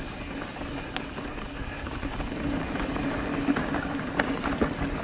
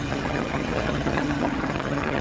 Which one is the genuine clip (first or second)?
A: first